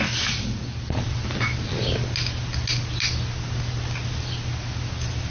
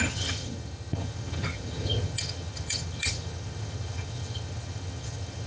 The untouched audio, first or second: first